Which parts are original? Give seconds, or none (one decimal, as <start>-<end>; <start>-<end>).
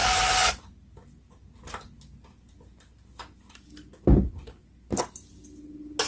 0.0-6.1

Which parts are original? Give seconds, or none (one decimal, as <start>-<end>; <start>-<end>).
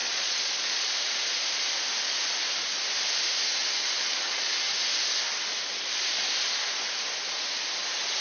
0.8-3.6; 4.7-8.2